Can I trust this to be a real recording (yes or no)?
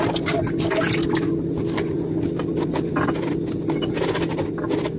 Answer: yes